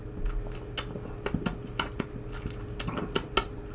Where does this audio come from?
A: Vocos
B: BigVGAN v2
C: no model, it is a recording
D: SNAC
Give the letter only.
C